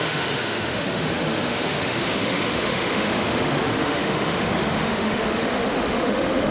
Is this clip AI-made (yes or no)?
yes